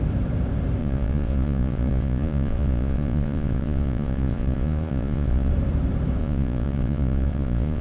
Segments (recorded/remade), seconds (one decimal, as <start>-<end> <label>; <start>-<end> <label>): 0.0-0.8 recorded; 0.8-5.5 remade; 5.5-6.2 recorded; 6.2-7.8 remade